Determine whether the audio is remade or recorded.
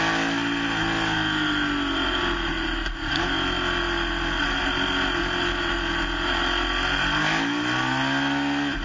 recorded